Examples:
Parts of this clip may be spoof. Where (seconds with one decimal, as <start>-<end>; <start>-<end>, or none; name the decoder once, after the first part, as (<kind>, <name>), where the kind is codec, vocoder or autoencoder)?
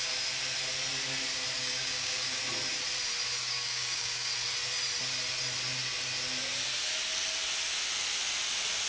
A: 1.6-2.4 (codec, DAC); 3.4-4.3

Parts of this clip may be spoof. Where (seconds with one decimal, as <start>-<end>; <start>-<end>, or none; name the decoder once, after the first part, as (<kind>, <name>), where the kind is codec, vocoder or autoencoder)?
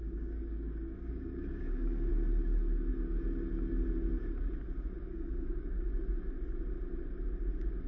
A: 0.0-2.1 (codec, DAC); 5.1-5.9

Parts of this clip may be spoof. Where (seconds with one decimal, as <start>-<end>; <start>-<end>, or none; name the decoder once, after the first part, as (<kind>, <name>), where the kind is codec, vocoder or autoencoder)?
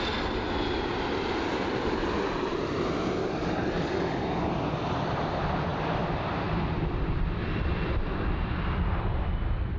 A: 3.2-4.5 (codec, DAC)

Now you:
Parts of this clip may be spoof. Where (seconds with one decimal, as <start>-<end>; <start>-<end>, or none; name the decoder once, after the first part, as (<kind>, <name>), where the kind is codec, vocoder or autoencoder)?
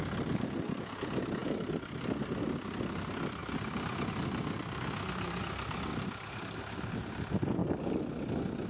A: none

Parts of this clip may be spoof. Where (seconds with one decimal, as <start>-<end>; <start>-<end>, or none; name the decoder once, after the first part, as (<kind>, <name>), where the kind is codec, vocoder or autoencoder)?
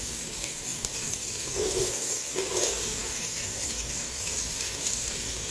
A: 0.0-5.5 (codec, DAC)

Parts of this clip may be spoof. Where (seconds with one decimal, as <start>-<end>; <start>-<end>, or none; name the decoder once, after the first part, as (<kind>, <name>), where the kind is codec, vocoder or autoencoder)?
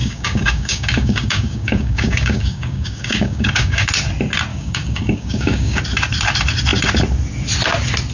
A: 0.0-3.9 (codec, DAC); 4.5-5.8